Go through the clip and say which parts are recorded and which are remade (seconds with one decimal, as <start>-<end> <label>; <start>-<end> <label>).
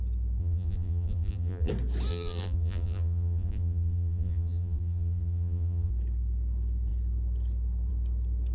0.0-0.4 recorded; 0.4-1.7 remade; 1.7-2.1 recorded; 2.1-5.9 remade; 5.9-8.5 recorded